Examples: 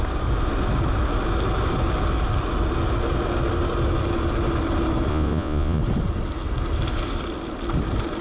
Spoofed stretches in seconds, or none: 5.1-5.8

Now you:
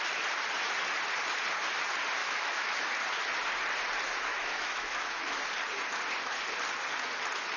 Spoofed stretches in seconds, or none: 2.2-2.8; 4.3-5.4

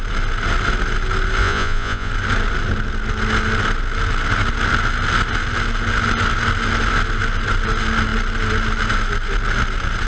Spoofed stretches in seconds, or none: 1.4-2.1